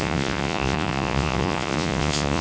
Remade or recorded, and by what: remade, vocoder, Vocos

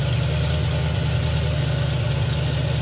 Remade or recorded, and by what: recorded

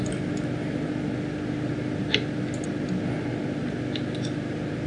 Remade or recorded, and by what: recorded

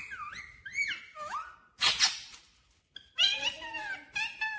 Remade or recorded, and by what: recorded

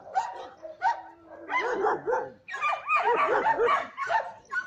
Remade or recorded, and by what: recorded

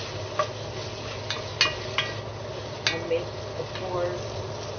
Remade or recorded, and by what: recorded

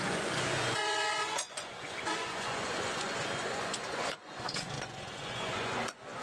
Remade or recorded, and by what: remade, vocoder, Vocos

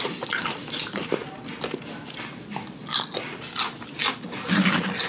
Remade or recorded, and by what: recorded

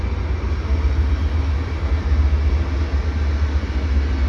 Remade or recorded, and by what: recorded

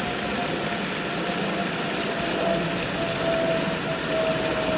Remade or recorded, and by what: recorded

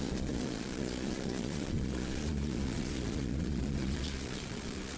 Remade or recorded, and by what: remade, vocoder, Vocos